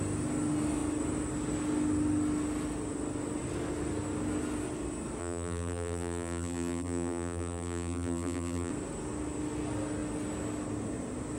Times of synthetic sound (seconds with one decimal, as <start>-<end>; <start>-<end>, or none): 5.2-8.7